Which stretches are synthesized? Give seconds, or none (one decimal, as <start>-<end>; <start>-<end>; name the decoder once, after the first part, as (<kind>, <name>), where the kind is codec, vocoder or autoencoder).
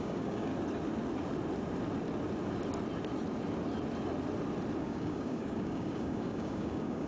0.0-0.5 (codec, DAC); 4.8-7.1